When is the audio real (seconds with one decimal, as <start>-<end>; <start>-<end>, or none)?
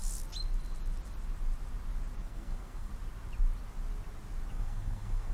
0.0-2.2; 2.9-4.5